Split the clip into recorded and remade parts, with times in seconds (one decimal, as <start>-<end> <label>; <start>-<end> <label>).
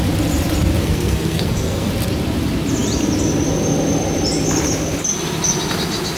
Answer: 0.0-0.8 recorded; 0.8-1.9 remade; 1.9-6.2 recorded